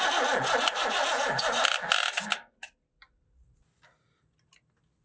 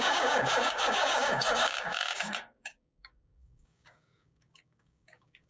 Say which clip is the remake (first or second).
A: second